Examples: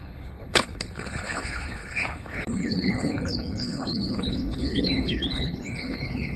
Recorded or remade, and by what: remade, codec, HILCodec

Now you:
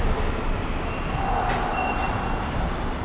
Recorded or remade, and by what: recorded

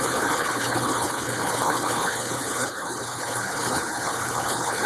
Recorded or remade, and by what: remade, codec, HILCodec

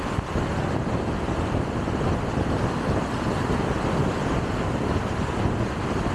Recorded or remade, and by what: recorded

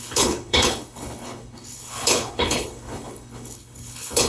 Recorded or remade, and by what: remade, codec, HILCodec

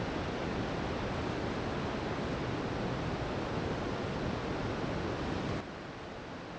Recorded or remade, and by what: recorded